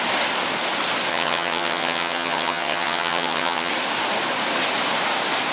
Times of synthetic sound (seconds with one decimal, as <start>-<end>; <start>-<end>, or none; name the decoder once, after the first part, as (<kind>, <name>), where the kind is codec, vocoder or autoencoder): 1.1-3.7 (vocoder, HiFi-GAN)

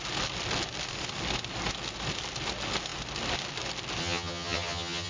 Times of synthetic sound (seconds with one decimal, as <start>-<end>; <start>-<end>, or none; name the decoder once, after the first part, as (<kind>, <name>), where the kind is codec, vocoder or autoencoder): 4.0-5.1 (vocoder, HiFi-GAN)

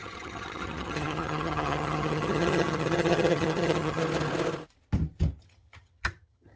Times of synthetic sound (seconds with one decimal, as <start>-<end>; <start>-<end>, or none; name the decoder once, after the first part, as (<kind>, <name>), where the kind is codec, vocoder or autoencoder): 0.0-4.0 (vocoder, HiFi-GAN); 5.4-6.6

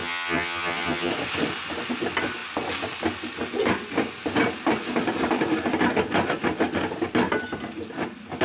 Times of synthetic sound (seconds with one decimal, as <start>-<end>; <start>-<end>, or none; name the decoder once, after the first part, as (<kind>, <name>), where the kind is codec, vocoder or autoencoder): 0.0-1.1 (vocoder, HiFi-GAN)

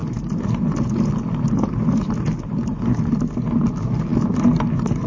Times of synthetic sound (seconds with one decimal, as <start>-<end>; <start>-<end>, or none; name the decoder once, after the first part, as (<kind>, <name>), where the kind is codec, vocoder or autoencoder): none

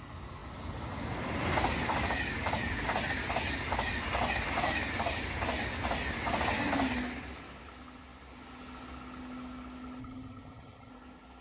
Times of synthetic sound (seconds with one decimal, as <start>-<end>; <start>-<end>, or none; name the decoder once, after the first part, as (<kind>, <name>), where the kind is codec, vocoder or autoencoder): 10.0-10.9 (vocoder, HiFi-GAN)

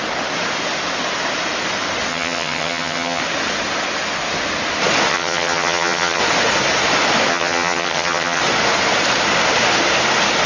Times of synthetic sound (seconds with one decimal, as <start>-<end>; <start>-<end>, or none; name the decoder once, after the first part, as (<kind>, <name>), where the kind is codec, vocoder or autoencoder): 2.1-3.2 (vocoder, HiFi-GAN); 5.1-6.2; 7.3-8.4